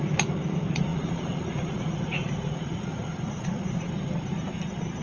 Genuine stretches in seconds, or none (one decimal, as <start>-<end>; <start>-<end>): 0.0-0.9; 3.9-5.0